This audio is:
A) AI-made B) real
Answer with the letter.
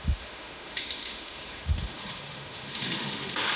A